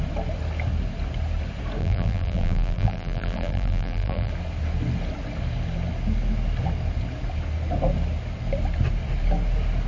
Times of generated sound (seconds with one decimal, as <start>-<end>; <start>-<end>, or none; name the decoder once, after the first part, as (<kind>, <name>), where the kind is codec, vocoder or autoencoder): 1.8-4.3 (vocoder, BigVGAN v2)